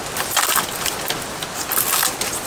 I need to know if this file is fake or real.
real